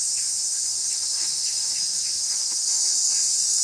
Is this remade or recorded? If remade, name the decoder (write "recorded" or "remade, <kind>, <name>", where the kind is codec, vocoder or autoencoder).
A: remade, autoencoder, DAC-VAE